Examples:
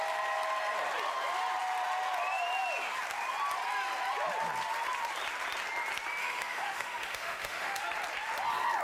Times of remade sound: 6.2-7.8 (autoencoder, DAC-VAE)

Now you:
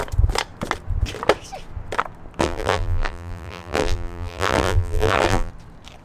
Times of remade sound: 2.4-5.5 (vocoder, BigVGAN v2)

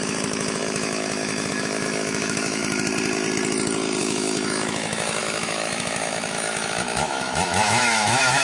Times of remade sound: 0.0-2.6 (autoencoder, DAC-VAE); 4.0-8.4

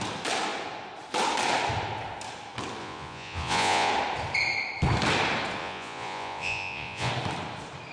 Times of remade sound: 2.8-3.9 (vocoder, Vocos); 5.6-7.1

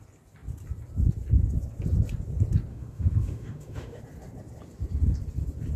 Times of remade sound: 2.7-4.0 (autoencoder, DAC-VAE)

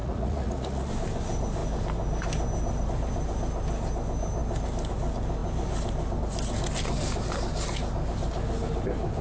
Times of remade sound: 0.0-0.9 (vocoder, Vocos)

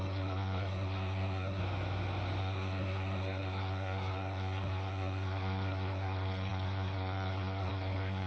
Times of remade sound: 0.0-1.6 (codec, SNAC); 2.4-8.3

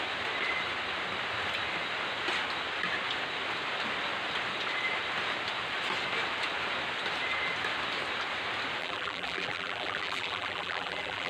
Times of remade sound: 8.8-11.3 (vocoder, BigVGAN v2)